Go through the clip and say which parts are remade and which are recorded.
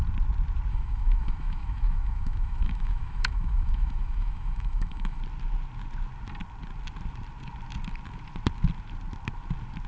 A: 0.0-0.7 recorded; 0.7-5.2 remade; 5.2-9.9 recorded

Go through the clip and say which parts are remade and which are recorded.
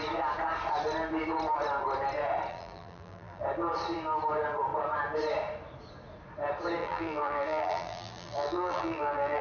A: 0.0-2.5 recorded; 2.5-3.4 remade; 3.4-6.8 recorded; 6.8-9.4 remade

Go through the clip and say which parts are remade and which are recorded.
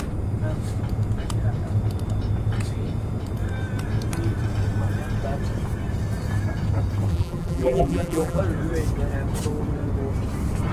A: 0.0-7.1 recorded; 7.1-8.4 remade; 8.4-10.7 recorded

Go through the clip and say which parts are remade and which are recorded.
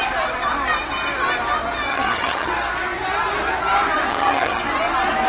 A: 0.0-1.9 recorded; 1.9-2.5 remade; 2.5-4.1 recorded; 4.1-4.6 remade; 4.6-5.3 recorded